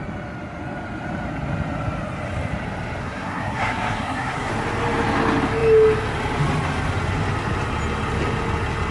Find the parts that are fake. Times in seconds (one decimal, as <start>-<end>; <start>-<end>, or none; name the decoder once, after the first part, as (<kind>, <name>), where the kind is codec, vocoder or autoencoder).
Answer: 3.0-4.5 (codec, SNAC)